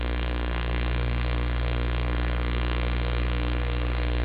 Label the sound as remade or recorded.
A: remade